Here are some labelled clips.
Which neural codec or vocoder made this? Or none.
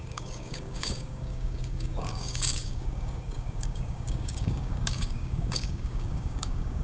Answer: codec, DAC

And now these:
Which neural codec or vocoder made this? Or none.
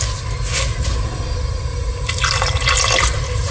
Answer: none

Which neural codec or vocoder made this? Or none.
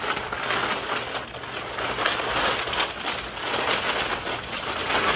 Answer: none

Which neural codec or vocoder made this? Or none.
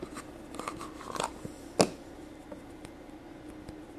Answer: none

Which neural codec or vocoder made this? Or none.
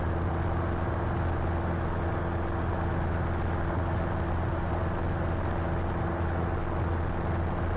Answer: none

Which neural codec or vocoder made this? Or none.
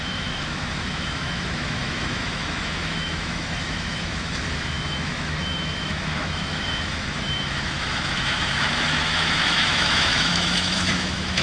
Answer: autoencoder, DAC-VAE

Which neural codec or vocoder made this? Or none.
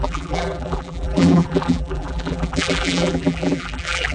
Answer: vocoder, BigVGAN v2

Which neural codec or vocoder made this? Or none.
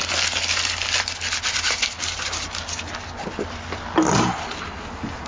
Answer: none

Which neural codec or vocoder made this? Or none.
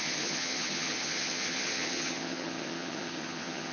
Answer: vocoder, HiFi-GAN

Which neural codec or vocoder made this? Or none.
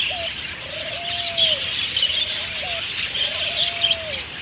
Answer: none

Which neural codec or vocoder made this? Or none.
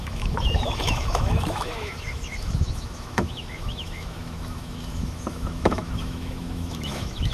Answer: autoencoder, DAC-VAE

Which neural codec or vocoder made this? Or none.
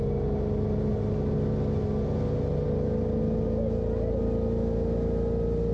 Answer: none